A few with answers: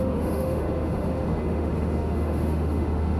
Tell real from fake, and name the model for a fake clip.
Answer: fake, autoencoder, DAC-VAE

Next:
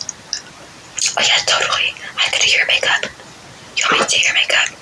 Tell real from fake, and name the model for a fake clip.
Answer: real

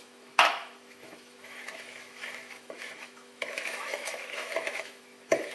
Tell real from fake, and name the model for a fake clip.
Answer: fake, autoencoder, DAC-VAE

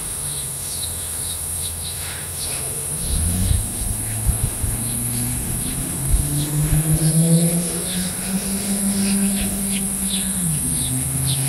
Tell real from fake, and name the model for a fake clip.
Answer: fake, autoencoder, DAC-VAE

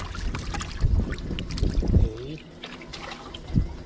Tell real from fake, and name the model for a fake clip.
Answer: real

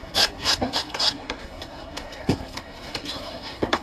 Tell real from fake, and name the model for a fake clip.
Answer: fake, codec, SNAC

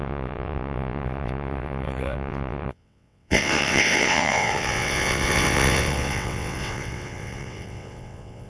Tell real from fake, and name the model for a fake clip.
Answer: fake, vocoder, WaveNeXt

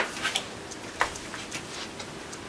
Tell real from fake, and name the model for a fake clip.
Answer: real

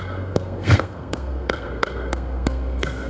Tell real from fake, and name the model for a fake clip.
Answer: fake, codec, SNAC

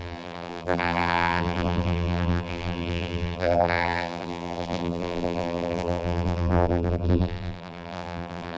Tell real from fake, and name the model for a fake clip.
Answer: fake, vocoder, BigVGAN v2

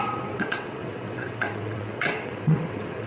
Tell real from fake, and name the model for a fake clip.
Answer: fake, vocoder, WaveNeXt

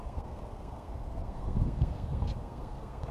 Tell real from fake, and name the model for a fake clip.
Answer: fake, codec, SNAC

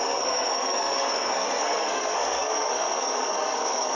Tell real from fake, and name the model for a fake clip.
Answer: fake, codec, SNAC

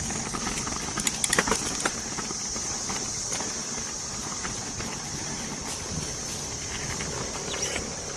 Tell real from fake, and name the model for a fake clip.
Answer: real